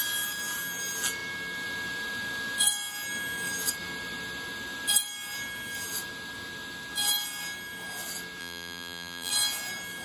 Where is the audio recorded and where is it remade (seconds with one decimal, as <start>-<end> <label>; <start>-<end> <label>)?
0.0-8.4 recorded; 8.4-9.3 remade; 9.3-10.0 recorded